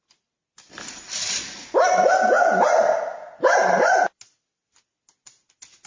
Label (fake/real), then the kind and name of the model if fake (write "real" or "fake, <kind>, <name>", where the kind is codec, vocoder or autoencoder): real